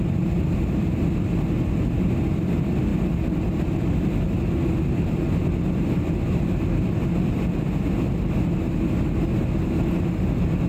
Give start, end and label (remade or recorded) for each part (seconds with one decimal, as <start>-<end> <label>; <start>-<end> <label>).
0.0-10.7 recorded